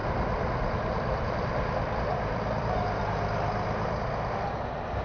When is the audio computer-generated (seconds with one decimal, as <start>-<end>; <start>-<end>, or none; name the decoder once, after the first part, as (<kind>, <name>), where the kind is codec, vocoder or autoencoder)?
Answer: 0.0-3.0 (vocoder, BigVGAN v2)